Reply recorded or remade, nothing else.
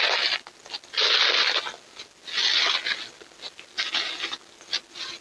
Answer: recorded